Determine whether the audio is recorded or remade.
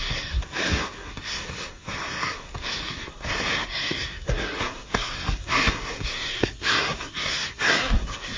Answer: remade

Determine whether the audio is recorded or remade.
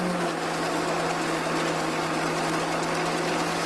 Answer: recorded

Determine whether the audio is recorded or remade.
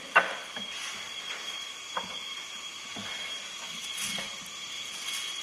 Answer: recorded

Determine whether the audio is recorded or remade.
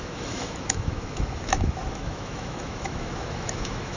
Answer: remade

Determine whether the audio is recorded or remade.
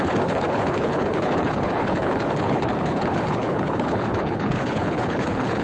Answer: remade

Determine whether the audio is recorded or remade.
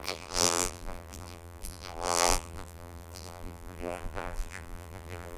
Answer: remade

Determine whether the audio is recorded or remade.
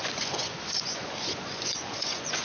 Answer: remade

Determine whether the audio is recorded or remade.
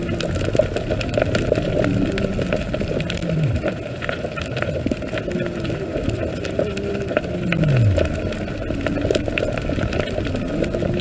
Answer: recorded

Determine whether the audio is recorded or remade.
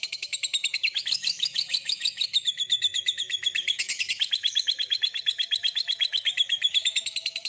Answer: remade